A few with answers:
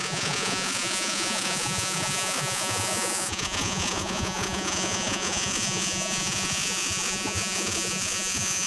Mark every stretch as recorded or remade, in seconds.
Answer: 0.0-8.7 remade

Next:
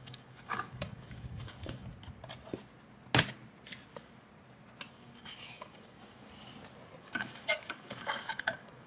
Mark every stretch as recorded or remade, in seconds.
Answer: 0.0-1.9 remade; 1.9-4.9 recorded; 4.9-6.3 remade; 6.3-7.0 recorded; 7.0-8.9 remade